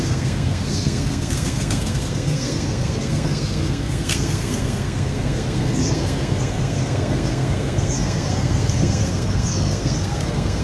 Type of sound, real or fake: fake